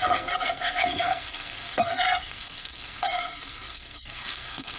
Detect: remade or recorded remade